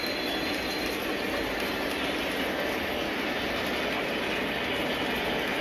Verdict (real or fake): real